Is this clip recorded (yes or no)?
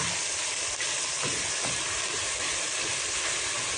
yes